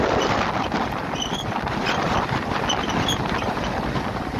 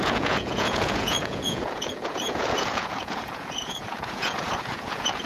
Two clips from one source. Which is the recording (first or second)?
first